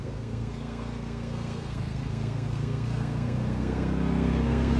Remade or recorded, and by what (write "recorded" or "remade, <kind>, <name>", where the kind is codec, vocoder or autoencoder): remade, codec, SNAC